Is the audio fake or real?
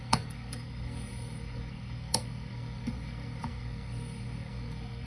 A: fake